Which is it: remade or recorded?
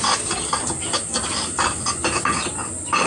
recorded